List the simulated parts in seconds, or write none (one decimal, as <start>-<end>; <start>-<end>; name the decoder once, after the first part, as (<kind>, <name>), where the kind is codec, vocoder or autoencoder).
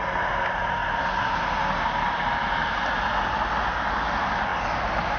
none